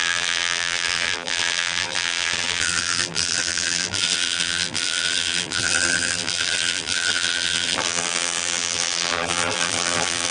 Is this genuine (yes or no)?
no